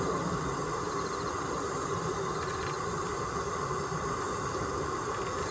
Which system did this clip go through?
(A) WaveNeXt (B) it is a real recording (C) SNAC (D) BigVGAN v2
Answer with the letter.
B